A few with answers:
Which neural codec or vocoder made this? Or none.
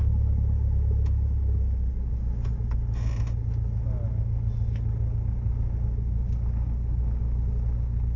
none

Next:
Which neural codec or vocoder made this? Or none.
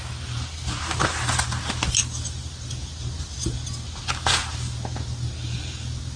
none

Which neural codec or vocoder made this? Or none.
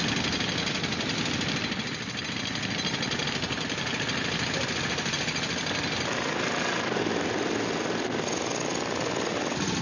none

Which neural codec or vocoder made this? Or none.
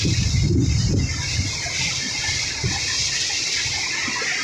none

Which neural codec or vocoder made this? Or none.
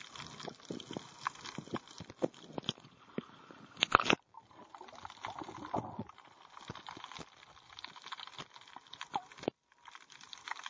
none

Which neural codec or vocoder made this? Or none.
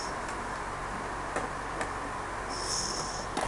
none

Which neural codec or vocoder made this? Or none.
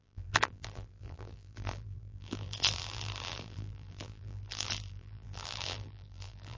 vocoder, BigVGAN v2